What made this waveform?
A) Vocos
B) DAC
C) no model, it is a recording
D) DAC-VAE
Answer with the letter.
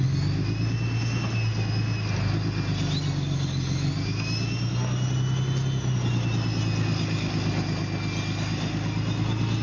C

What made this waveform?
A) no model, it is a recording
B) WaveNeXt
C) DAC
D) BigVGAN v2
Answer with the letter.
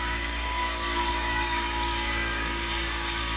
C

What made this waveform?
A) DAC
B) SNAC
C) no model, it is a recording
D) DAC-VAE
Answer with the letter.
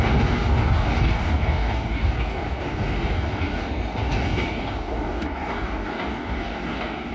A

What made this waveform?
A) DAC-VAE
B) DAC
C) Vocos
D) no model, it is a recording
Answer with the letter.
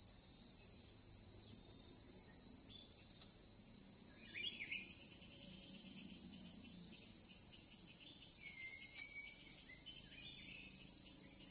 D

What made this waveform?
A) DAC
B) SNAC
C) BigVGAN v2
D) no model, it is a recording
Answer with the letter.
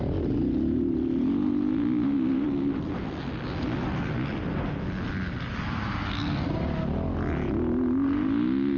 D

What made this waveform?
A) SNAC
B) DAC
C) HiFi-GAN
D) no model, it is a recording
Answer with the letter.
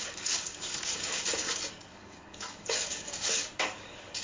B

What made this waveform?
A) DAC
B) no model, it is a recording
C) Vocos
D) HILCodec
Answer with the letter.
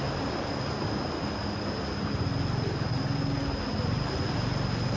B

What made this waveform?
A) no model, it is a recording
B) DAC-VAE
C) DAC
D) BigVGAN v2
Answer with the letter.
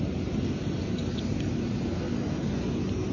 A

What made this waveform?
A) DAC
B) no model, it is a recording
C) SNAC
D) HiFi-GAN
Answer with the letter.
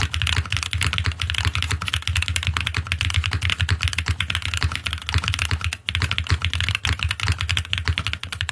B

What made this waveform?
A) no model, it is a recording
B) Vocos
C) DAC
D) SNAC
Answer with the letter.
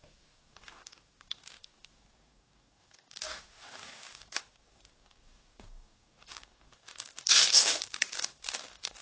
C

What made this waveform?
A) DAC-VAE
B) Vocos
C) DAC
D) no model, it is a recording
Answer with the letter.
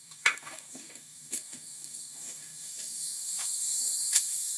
C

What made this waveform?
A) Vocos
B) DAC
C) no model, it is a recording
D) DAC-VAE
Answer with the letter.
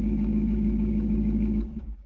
B